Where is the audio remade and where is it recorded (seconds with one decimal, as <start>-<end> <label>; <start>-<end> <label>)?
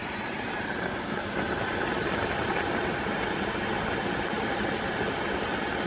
0.0-5.9 recorded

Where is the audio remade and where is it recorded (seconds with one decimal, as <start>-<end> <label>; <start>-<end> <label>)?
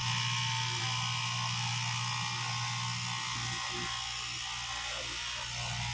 0.0-5.9 recorded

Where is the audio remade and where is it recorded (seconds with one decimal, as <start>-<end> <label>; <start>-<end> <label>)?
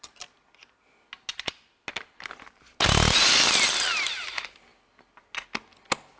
0.0-6.2 recorded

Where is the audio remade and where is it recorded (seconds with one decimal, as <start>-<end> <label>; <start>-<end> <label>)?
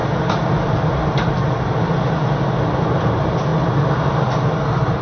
0.0-5.0 recorded